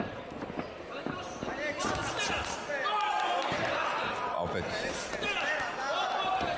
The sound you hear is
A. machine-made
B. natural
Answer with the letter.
B